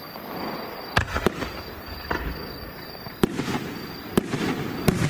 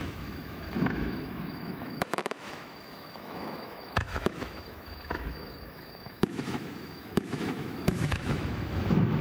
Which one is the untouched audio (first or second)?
first